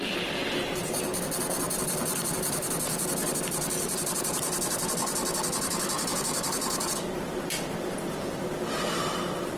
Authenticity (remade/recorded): recorded